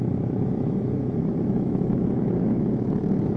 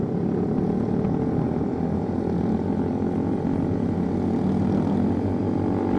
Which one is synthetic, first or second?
first